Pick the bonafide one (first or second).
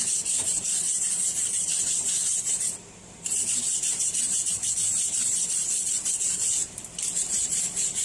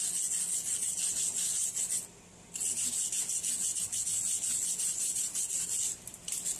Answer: second